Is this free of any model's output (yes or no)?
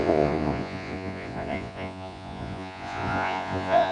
no